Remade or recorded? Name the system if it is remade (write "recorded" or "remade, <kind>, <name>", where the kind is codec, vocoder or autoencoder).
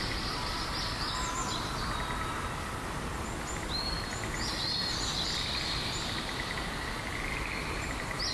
recorded